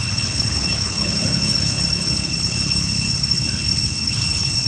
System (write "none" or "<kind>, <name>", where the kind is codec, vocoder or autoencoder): codec, HILCodec